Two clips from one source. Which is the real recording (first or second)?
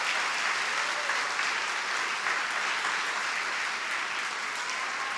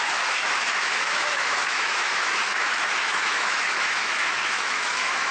first